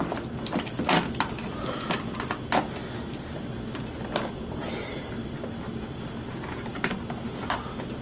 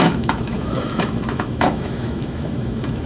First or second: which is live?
first